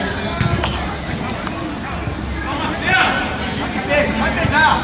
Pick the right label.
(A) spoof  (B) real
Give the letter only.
B